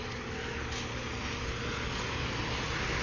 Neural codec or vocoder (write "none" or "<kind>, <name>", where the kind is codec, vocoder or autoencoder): none